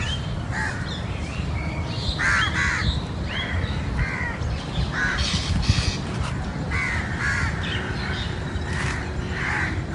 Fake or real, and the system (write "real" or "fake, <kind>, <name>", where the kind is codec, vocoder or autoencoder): fake, vocoder, BigVGAN v2